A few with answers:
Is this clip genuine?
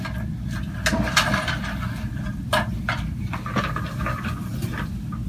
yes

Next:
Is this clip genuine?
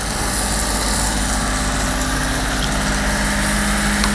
yes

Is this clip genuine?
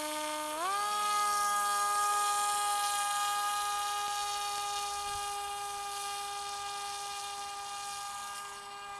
yes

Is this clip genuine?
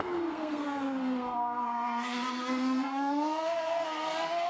no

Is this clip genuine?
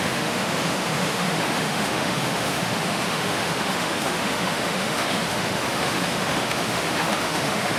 no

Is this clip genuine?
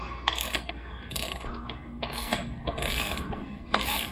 no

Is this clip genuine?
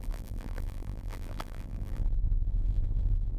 no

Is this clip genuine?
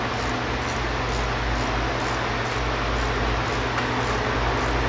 yes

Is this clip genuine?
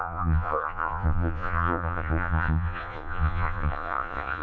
no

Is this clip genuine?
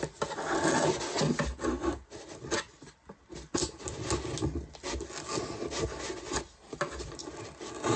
yes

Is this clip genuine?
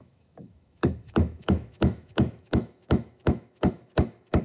no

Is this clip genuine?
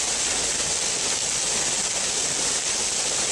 yes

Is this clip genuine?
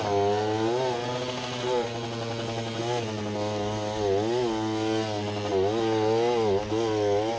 yes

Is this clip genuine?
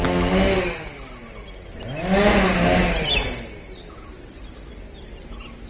yes